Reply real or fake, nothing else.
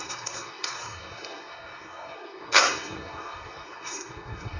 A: fake